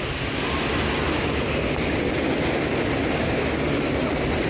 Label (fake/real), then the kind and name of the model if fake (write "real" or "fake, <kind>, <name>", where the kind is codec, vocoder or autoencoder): real